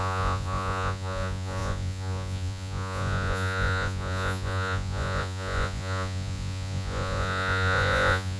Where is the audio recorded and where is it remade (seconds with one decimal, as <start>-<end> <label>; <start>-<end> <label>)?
0.0-8.4 remade